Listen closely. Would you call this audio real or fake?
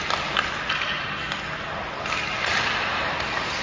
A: real